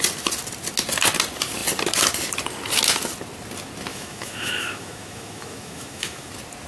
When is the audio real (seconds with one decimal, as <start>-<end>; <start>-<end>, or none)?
0.0-3.9; 6.3-6.7